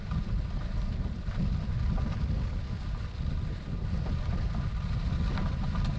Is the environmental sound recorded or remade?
recorded